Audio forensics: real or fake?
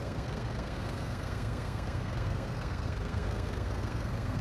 fake